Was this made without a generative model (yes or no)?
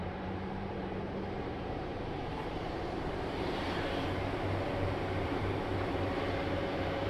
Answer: no